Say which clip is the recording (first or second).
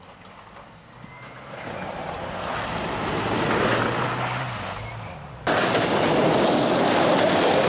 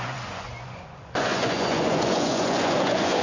first